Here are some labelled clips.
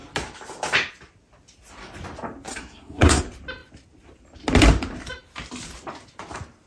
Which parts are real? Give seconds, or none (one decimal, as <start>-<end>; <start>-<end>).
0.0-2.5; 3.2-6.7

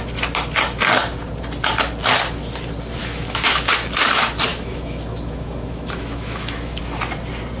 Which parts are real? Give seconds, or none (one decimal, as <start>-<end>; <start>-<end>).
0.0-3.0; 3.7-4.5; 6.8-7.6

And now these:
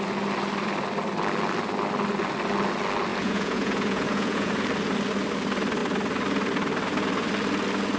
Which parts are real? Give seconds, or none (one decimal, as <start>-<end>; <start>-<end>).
0.0-3.1; 4.5-8.0

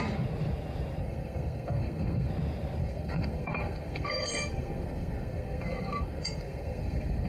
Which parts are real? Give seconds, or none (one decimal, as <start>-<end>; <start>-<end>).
0.0-1.0; 2.3-2.8